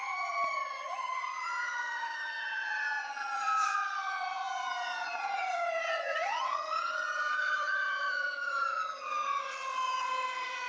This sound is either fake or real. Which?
fake